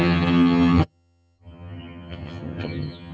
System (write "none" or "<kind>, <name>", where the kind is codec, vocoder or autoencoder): vocoder, HiFi-GAN